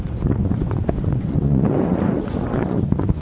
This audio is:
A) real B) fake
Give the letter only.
B